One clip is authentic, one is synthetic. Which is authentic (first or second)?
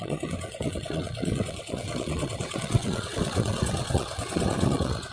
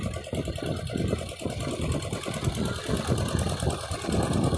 second